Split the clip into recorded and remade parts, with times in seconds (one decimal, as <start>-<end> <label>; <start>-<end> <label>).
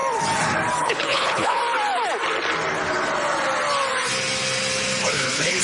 0.0-0.8 recorded; 0.8-1.6 remade; 1.6-5.0 recorded; 5.0-5.6 remade